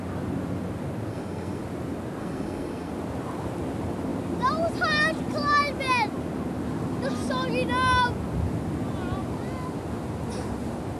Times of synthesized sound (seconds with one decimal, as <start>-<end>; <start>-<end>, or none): 1.1-1.6; 2.2-2.9